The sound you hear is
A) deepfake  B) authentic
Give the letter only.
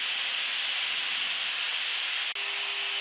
B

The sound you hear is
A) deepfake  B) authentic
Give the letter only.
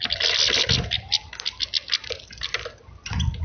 B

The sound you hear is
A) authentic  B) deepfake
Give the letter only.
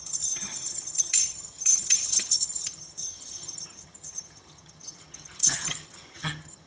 B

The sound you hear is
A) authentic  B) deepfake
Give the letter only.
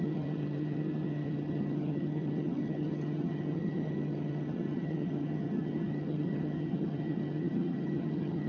B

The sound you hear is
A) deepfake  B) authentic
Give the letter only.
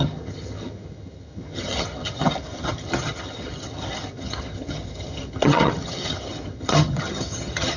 A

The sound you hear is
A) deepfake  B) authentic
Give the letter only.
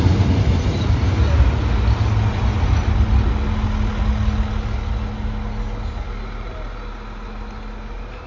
B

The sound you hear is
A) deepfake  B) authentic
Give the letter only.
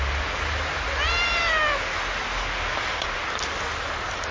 B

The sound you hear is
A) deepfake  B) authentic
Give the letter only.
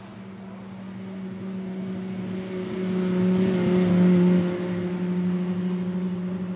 B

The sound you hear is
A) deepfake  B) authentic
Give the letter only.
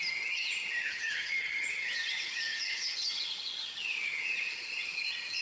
A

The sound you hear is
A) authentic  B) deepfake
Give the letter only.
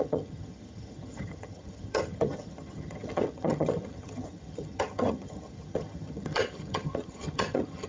B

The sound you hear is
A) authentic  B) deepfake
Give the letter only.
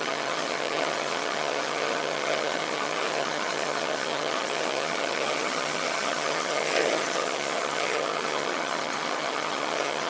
B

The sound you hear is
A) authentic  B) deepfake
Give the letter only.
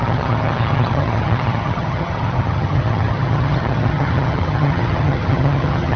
B